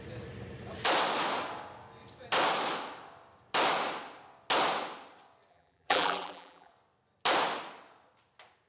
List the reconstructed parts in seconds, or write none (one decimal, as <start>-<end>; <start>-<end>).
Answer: 5.5-6.7